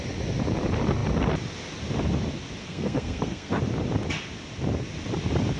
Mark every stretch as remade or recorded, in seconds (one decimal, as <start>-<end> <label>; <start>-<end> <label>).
0.0-2.6 recorded; 2.6-3.6 remade; 3.6-5.6 recorded